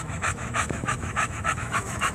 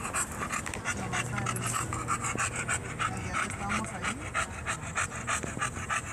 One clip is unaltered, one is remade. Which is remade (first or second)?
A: first